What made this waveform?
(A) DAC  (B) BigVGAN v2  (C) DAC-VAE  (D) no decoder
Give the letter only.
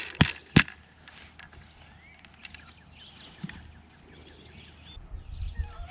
D